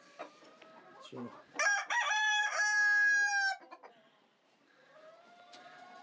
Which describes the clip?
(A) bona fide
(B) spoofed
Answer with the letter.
B